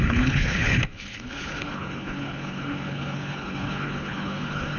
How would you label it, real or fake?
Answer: fake